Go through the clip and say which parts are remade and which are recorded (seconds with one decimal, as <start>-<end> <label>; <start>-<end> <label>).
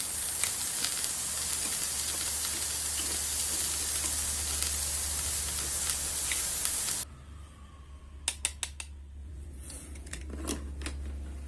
0.0-9.2 recorded; 9.2-10.2 remade; 10.2-11.5 recorded